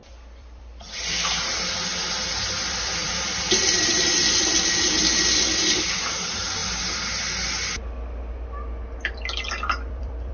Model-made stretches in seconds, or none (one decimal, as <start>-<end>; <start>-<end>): 0.0-6.6; 9.5-10.3